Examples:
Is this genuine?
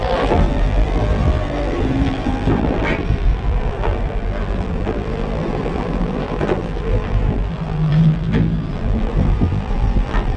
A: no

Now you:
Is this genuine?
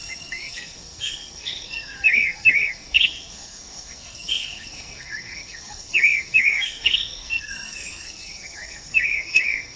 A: no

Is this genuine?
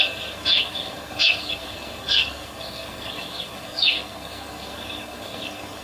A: no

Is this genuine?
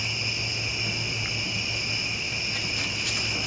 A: yes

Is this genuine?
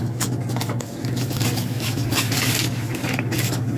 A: no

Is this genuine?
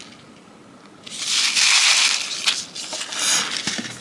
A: yes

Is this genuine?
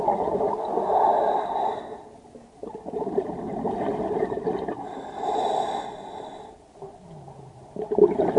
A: yes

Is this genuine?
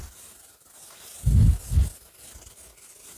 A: yes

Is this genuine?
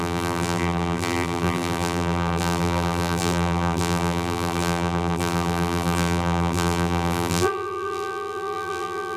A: no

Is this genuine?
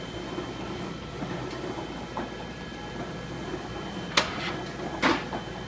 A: yes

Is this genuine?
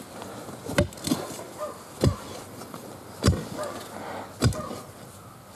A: yes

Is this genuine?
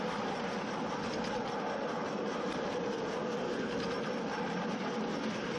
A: yes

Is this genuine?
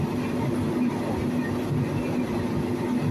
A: yes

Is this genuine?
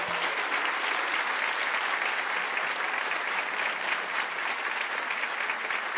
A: yes